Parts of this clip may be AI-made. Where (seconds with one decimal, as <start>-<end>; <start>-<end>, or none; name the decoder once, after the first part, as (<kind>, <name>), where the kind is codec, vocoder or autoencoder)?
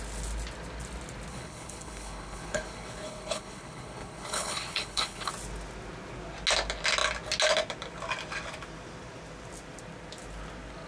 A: 1.3-5.3 (codec, HILCodec)